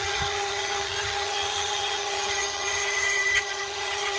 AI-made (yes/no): yes